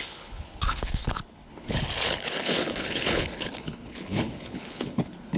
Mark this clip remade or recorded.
remade